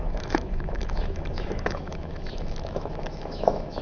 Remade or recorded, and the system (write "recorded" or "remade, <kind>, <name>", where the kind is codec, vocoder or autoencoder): remade, autoencoder, DAC-VAE